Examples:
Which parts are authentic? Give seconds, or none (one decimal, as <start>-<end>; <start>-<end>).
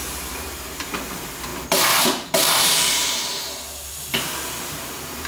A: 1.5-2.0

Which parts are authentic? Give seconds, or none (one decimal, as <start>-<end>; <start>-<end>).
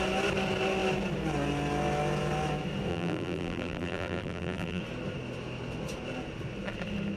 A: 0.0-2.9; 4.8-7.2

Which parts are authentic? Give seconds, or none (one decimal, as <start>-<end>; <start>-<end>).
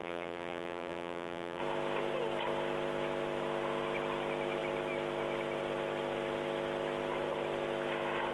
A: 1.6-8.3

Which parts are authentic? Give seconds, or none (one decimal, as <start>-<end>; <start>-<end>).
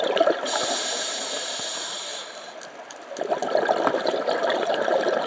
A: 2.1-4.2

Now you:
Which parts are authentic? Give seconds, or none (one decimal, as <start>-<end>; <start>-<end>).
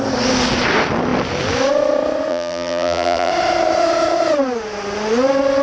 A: 0.0-2.3; 3.3-5.6